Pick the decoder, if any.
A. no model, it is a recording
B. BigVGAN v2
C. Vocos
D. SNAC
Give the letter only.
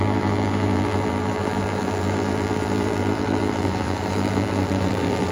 B